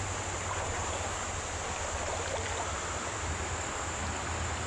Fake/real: real